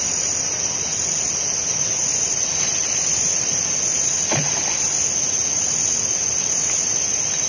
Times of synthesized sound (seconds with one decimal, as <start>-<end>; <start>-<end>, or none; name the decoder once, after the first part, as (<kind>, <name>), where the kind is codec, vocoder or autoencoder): none